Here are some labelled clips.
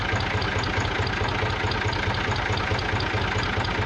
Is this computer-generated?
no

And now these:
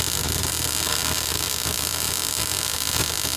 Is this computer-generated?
no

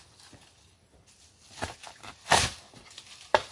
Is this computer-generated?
yes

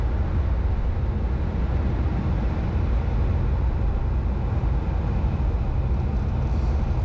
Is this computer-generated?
no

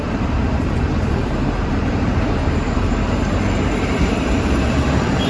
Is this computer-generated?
yes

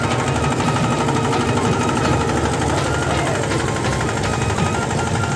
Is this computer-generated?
yes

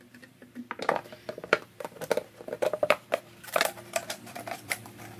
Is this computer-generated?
yes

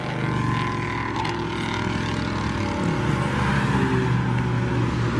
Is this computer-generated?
no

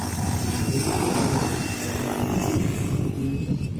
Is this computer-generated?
no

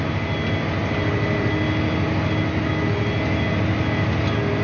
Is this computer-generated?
no